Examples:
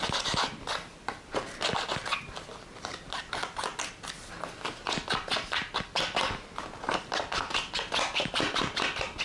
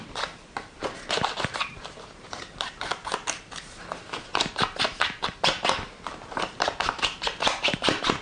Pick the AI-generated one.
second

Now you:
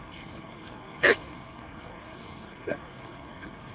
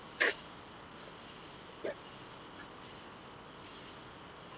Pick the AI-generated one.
first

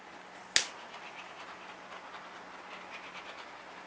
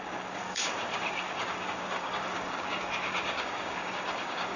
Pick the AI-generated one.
second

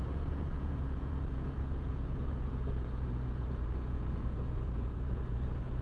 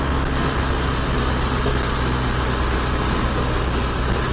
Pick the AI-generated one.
first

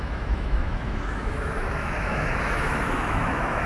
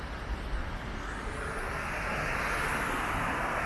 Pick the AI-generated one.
first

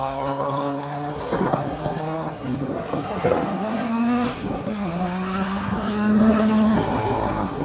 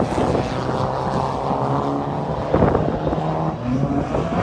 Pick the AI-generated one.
first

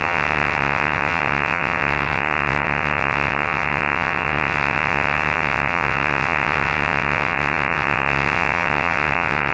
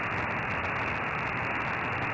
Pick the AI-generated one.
first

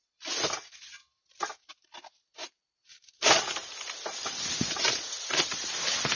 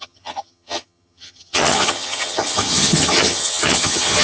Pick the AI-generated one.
second